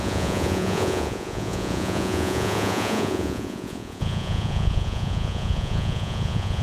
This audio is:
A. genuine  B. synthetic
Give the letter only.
B